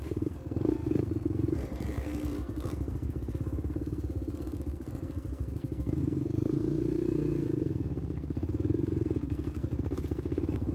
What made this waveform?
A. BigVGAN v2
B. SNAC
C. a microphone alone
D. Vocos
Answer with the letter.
B